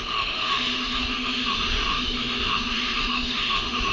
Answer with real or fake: fake